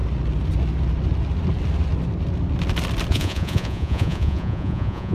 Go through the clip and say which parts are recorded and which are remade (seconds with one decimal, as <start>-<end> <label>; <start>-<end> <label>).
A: 0.0-3.1 recorded; 3.1-5.1 remade